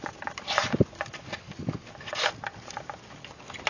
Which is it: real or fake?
real